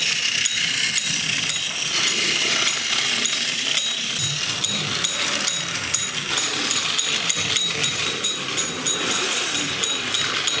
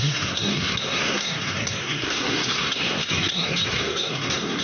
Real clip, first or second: first